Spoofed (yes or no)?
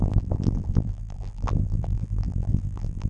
yes